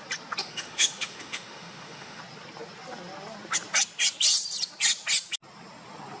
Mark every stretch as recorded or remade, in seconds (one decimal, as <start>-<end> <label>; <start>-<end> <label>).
0.0-0.4 recorded; 0.4-2.2 remade; 2.2-6.2 recorded